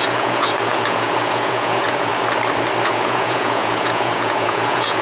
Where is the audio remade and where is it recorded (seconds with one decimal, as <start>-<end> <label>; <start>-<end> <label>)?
0.0-2.1 remade; 2.1-2.9 recorded; 2.9-5.0 remade